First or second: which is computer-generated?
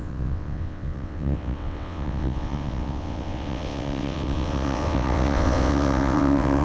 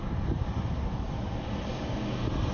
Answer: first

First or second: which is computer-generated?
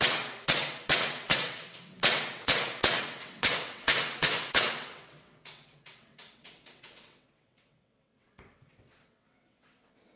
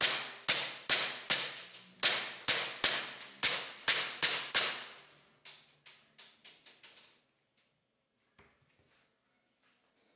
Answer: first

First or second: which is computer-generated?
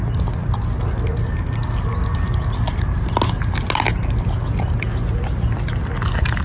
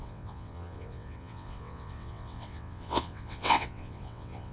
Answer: second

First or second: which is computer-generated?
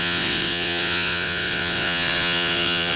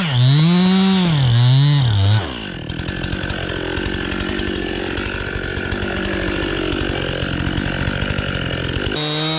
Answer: first